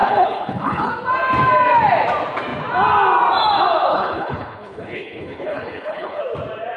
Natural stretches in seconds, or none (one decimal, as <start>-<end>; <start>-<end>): 0.9-3.9; 6.2-6.8